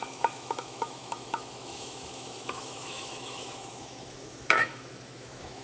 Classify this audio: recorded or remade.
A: remade